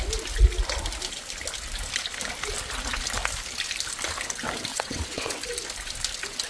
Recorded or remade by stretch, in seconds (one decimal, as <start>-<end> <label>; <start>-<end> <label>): 0.0-4.7 recorded; 4.7-5.4 remade; 5.4-6.5 recorded